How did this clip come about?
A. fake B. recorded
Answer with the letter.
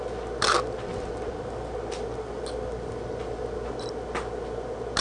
B